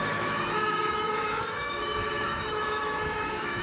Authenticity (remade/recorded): remade